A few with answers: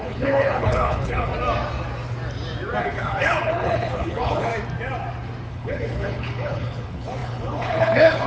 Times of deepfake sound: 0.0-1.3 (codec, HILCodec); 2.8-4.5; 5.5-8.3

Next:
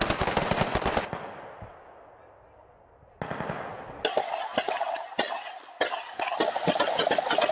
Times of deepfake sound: none